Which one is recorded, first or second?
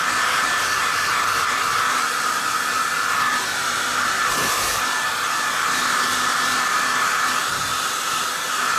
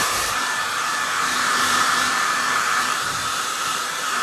first